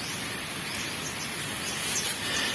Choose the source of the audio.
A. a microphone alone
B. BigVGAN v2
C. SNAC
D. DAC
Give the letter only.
A